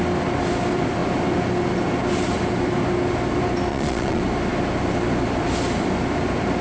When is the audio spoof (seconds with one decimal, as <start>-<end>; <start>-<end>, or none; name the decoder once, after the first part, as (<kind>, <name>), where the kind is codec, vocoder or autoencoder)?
3.7-4.2 (vocoder, Vocos)